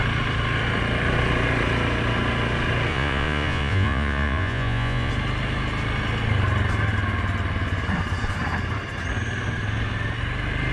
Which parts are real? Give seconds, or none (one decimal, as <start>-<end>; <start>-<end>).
0.0-2.9; 5.1-10.7